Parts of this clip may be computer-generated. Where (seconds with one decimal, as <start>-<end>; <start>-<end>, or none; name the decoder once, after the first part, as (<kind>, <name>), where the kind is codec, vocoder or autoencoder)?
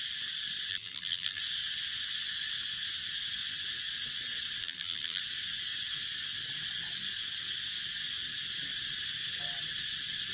0.7-1.4 (vocoder, BigVGAN v2); 4.6-5.2